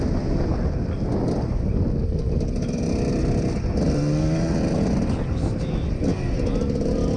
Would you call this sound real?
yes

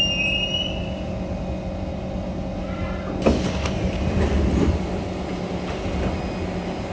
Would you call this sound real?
yes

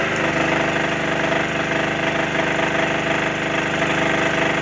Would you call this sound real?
yes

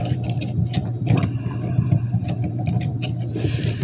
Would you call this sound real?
no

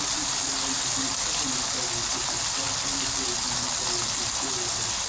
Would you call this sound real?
yes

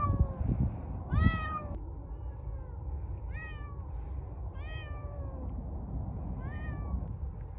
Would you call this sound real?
yes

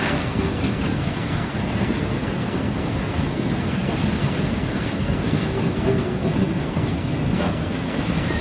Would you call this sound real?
no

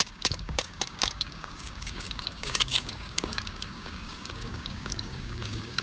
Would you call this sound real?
no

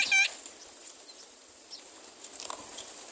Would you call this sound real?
yes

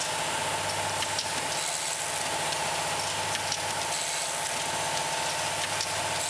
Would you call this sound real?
yes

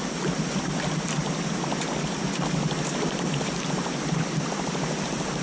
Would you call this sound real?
yes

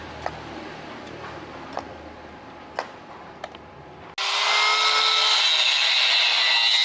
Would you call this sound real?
yes